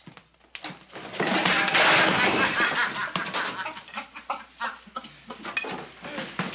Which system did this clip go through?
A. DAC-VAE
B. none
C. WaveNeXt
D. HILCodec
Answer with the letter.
B